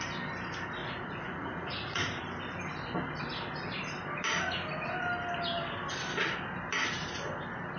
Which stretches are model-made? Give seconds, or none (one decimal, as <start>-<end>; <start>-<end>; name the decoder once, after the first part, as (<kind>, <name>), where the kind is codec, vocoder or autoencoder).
0.8-2.2 (vocoder, Vocos)